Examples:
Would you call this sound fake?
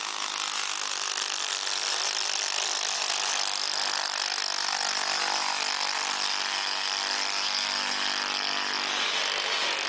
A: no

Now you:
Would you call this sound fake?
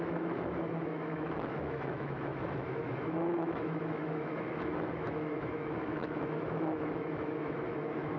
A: yes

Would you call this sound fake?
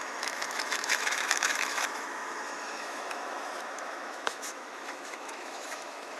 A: yes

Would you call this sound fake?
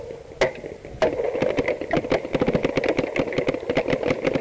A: no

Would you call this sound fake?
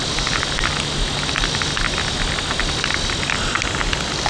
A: no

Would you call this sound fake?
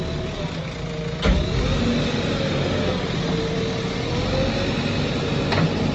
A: no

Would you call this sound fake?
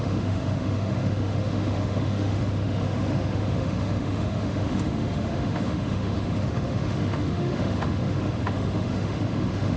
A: yes